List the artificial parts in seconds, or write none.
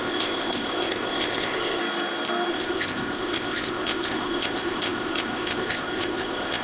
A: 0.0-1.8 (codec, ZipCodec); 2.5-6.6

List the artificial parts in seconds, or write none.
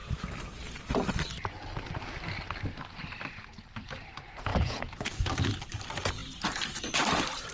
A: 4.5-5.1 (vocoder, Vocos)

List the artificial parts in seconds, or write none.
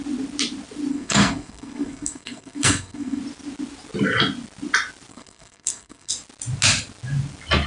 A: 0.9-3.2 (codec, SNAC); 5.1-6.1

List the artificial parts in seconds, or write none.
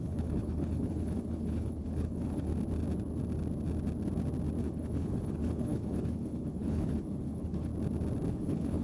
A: 0.0-2.5 (codec, HILCodec); 4.6-7.7; 8.3-8.8